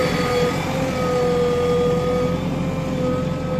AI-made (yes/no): no